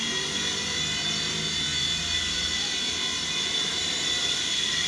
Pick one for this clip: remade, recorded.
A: recorded